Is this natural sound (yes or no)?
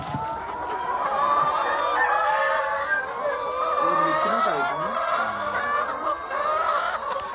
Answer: yes